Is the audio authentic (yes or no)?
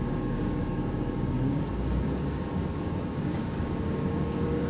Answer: no